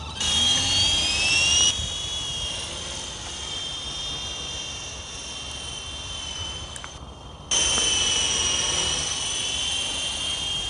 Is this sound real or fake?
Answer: real